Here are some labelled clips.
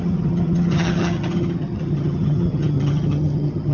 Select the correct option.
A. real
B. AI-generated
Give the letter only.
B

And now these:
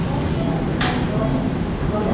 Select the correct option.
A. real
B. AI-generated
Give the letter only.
A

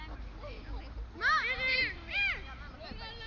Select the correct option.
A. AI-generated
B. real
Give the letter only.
B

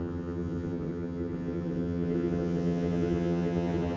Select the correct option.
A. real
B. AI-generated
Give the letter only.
B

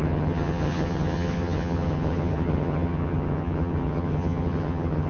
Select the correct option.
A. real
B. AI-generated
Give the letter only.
B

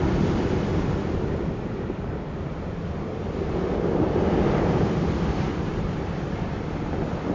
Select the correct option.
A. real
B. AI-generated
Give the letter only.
A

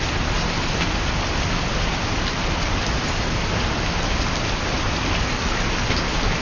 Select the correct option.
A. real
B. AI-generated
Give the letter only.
A